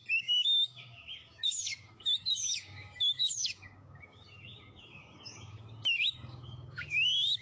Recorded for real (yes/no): no